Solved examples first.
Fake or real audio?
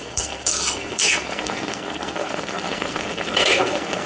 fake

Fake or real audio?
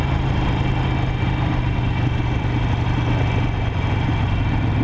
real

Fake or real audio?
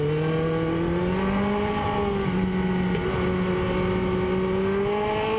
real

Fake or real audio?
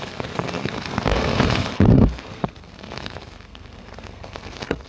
fake